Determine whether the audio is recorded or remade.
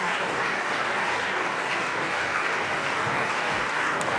remade